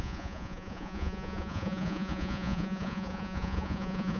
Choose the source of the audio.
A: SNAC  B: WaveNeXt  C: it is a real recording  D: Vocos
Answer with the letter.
D